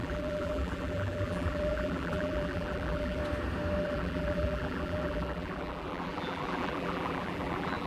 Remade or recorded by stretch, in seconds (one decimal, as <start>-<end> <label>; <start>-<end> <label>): 0.0-3.2 remade; 3.2-3.8 recorded; 3.8-7.9 remade